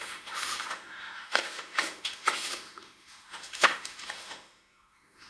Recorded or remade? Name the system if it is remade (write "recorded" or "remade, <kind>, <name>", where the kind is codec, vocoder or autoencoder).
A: remade, autoencoder, DAC-VAE